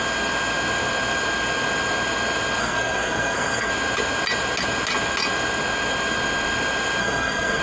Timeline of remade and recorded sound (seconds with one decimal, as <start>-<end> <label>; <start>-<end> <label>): 0.0-2.6 recorded; 2.6-3.7 remade; 3.7-7.0 recorded; 7.0-7.6 remade